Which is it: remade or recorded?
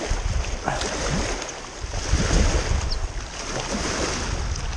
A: recorded